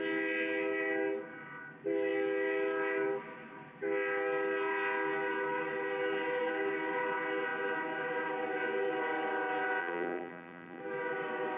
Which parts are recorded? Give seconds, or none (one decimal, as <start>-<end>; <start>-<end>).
0.0-9.8; 10.8-11.6